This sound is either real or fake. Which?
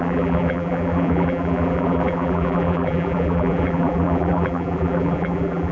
fake